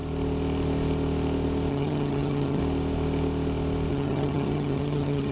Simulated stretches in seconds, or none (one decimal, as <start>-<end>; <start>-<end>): 1.7-2.6; 3.9-5.3